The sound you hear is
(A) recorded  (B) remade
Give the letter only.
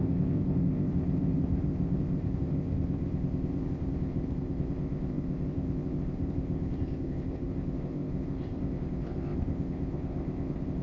B